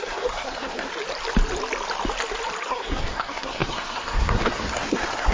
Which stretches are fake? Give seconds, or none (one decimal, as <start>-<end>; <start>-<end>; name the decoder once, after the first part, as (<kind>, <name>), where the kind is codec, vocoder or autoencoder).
0.0-0.9 (codec, SNAC); 2.7-5.3